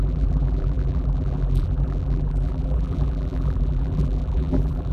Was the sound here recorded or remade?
remade